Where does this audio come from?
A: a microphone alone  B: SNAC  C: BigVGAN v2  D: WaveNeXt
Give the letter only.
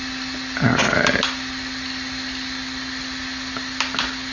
A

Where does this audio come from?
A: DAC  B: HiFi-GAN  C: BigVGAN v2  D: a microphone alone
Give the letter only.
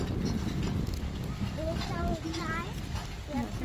D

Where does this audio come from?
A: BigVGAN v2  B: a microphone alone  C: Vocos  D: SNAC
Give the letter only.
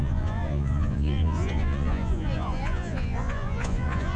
C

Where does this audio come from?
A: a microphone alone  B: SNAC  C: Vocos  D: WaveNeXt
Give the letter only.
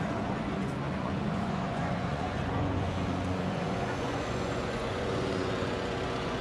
C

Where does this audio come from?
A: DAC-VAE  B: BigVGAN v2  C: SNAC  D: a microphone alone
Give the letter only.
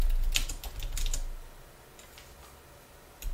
D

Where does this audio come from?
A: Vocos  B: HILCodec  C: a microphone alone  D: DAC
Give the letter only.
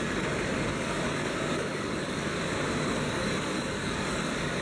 D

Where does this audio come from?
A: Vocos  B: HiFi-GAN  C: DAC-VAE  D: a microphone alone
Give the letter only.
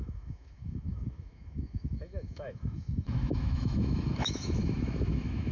C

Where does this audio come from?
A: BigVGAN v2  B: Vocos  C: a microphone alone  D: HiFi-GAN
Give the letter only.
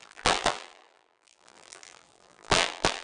A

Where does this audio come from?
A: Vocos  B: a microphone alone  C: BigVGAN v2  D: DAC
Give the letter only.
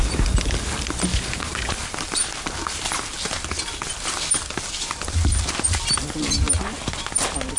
B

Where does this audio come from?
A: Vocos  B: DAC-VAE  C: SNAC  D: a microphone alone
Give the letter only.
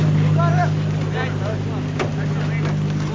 D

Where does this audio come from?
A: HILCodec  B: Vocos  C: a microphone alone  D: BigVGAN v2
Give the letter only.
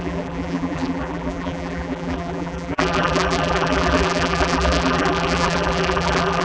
D